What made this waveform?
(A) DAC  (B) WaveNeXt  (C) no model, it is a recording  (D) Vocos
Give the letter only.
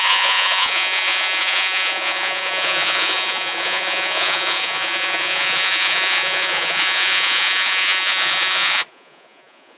D